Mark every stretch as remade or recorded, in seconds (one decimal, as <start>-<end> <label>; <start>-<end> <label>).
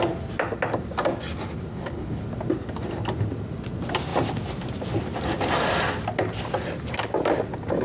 0.0-1.7 recorded; 1.7-2.2 remade; 2.2-7.8 recorded